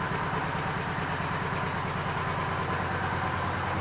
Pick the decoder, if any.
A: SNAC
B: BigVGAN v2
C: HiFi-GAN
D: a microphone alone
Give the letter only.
D